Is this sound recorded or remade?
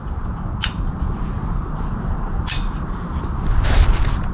recorded